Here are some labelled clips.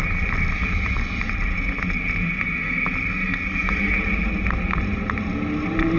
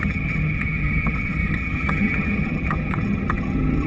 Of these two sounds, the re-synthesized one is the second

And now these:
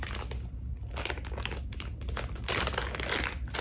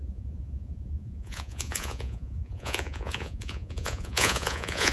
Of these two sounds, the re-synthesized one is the second